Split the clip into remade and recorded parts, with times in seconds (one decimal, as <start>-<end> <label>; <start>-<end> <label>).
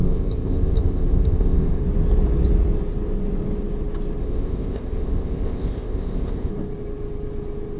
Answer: 0.0-1.8 remade; 1.8-4.2 recorded; 4.2-6.5 remade; 6.5-7.8 recorded